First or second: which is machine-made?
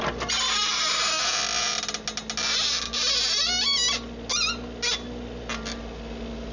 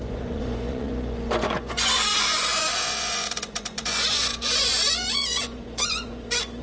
second